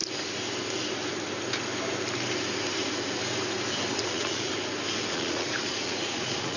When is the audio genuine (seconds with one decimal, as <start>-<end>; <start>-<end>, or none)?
0.0-4.0; 4.5-5.1